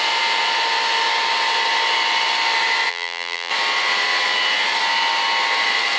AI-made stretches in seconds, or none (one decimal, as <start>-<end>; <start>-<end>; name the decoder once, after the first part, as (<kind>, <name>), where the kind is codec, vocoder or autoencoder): 2.9-3.5 (vocoder, BigVGAN v2)